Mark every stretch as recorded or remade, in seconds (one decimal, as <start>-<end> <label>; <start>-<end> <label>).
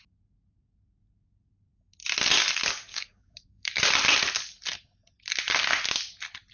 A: 0.0-2.9 recorded; 2.9-3.8 remade; 3.8-6.5 recorded